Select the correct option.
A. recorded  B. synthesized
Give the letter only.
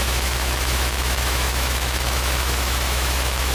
B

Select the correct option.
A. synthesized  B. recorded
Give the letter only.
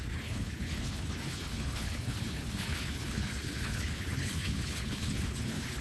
A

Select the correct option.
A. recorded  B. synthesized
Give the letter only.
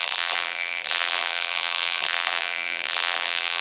B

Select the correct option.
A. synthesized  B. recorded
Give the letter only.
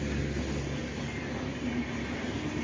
B